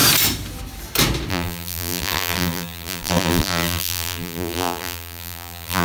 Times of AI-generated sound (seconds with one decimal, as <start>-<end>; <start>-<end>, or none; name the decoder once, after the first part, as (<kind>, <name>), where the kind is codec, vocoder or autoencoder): 1.3-5.8 (vocoder, BigVGAN v2)